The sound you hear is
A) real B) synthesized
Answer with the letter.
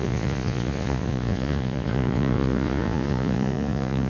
B